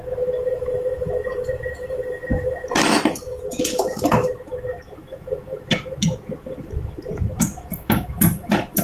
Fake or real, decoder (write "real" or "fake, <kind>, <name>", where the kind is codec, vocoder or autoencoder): fake, autoencoder, DAC-VAE